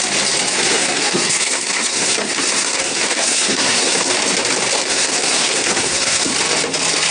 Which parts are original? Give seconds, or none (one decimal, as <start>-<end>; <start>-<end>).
0.0-0.5; 4.1-4.8; 6.3-7.1